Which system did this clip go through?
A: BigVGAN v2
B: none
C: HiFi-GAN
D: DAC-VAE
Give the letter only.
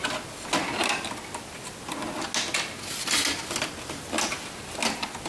B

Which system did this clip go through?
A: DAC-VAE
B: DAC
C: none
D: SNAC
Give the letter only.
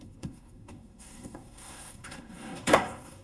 D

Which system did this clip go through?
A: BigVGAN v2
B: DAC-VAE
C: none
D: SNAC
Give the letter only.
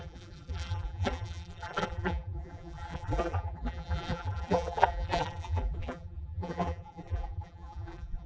A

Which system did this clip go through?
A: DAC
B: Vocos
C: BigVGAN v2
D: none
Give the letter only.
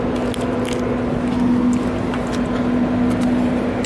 D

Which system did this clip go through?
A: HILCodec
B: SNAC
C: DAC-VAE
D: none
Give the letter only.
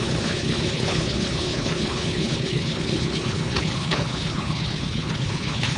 A